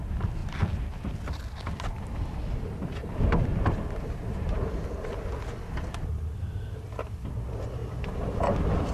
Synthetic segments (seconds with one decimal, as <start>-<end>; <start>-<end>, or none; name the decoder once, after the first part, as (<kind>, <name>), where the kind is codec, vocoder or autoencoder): none